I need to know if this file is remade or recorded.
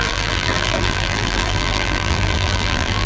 remade